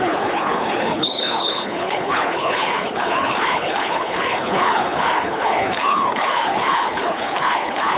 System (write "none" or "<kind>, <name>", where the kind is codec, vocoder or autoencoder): codec, HILCodec